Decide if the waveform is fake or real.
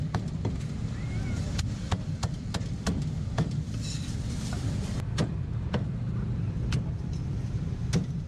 fake